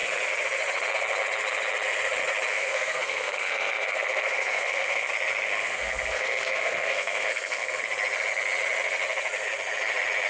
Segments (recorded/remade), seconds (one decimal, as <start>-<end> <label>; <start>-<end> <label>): 0.0-2.5 recorded; 2.5-5.1 remade; 5.1-5.5 recorded; 5.5-7.8 remade; 7.8-10.3 recorded